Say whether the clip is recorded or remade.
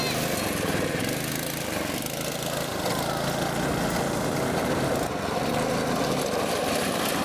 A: recorded